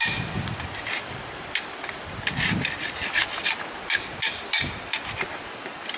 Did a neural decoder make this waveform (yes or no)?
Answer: no